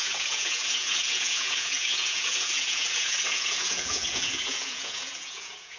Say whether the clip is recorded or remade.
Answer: remade